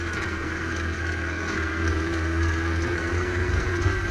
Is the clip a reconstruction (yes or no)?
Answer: yes